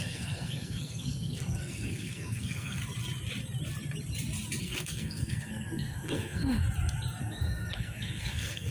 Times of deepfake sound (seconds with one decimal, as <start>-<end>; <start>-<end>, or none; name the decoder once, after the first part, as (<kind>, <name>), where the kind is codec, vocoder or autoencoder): 0.0-2.8 (codec, SNAC); 4.6-6.6; 7.2-8.7